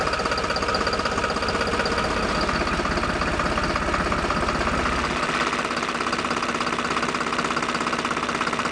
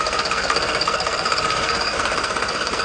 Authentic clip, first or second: first